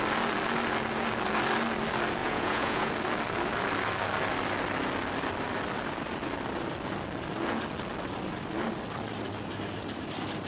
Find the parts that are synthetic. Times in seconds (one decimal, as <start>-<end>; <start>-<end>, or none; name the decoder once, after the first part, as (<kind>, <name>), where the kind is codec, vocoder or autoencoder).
2.2-2.9 (vocoder, Vocos)